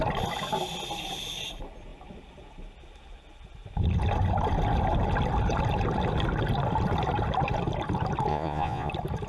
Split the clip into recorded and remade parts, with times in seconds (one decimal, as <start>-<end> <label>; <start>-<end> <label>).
0.0-8.3 recorded; 8.3-8.9 remade; 8.9-9.3 recorded